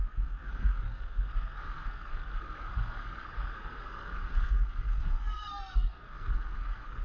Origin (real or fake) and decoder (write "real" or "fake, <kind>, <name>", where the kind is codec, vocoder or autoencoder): fake, codec, SNAC